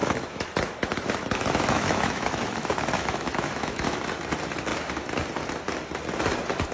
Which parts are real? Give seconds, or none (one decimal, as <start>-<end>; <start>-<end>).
4.0-6.7